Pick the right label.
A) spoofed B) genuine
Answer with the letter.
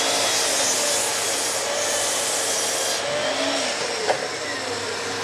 B